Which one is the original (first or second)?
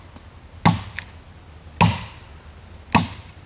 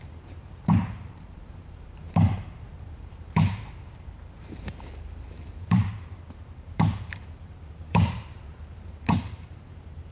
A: first